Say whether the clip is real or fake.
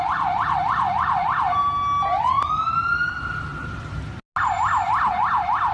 real